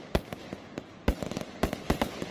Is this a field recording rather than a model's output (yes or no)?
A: yes